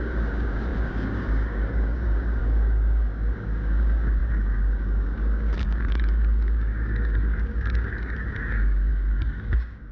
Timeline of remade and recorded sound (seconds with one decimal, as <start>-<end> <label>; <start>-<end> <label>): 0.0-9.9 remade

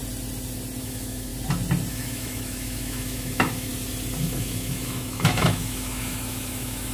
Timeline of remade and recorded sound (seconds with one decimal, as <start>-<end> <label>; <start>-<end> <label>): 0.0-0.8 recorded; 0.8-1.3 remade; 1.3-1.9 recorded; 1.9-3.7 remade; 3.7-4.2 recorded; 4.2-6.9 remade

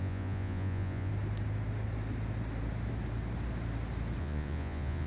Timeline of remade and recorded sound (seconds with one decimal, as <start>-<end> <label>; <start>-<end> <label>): 0.0-1.1 remade; 1.1-4.2 recorded; 4.2-5.1 remade